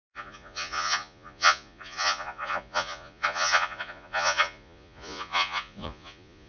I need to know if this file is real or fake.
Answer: fake